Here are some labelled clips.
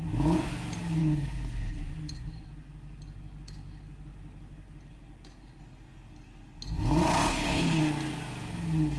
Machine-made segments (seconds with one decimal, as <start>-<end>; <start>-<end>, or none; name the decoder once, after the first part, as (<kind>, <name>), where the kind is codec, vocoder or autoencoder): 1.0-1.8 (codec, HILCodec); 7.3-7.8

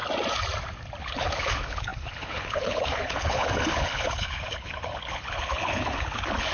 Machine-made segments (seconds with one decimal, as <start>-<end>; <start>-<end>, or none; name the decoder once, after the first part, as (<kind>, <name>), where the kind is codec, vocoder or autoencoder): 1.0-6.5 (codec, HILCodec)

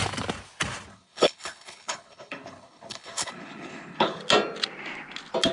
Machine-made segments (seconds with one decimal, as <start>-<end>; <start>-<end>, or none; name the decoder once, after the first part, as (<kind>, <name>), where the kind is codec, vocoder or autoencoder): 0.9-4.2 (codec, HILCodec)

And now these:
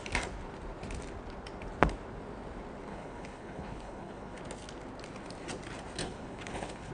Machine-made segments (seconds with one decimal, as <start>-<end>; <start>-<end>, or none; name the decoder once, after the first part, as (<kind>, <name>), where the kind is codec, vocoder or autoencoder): 2.9-4.4 (codec, HILCodec); 6.0-6.9

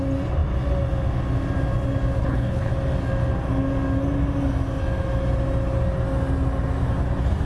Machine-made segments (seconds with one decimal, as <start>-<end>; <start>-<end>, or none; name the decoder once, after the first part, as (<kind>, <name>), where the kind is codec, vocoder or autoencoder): 2.2-2.7 (codec, HILCodec)

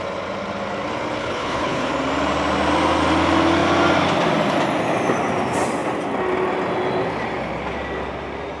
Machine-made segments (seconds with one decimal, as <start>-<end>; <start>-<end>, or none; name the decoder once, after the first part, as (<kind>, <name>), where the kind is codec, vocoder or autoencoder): 1.2-1.9 (codec, HILCodec)

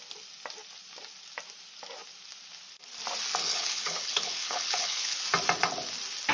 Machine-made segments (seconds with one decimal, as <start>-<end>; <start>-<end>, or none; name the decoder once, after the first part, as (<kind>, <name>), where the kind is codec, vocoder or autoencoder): 3.4-5.2 (codec, HILCodec)